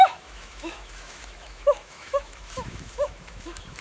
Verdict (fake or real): fake